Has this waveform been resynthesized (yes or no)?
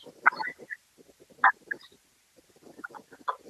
no